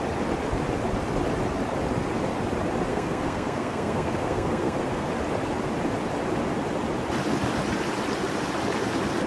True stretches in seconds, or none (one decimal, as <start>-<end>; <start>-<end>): 0.0-2.9; 5.1-9.3